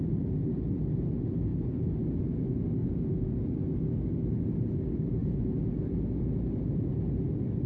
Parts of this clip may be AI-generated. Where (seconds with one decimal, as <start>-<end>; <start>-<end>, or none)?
2.8-3.5; 5.2-5.8

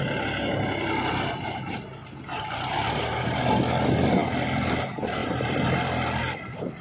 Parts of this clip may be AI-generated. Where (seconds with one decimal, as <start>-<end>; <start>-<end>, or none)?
2.0-3.4; 4.2-4.8; 5.2-6.8